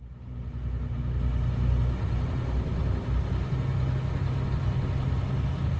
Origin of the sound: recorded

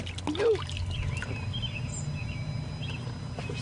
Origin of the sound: recorded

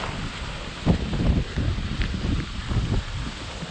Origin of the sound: recorded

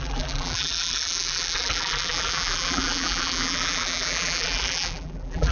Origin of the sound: remade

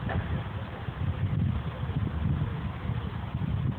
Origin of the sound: remade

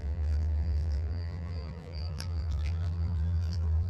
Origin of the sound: remade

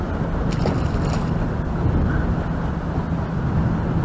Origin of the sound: recorded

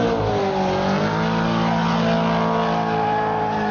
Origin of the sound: recorded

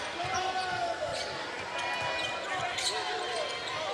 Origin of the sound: recorded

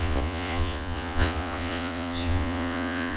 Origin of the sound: remade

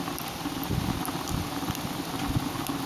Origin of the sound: recorded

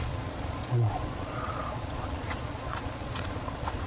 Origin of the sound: remade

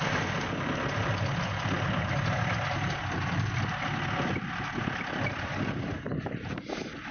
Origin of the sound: recorded